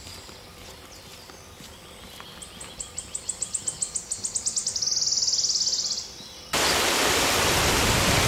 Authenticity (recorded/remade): recorded